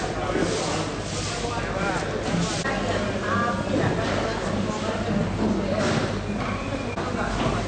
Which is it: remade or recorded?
recorded